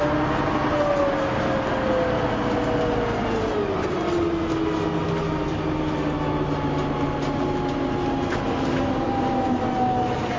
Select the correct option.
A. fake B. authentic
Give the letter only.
B